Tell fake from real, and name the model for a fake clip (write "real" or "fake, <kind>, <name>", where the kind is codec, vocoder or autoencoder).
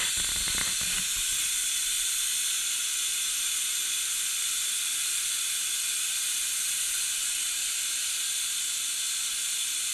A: real